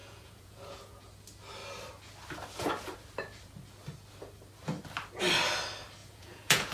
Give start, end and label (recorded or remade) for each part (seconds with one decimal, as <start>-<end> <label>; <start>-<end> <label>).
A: 0.0-1.0 remade; 1.0-6.0 recorded; 6.0-6.7 remade